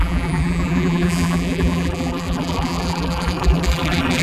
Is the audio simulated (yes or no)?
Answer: yes